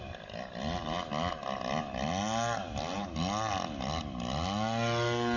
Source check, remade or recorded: recorded